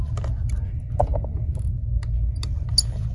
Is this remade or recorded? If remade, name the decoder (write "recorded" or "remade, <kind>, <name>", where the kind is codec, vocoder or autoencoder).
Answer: recorded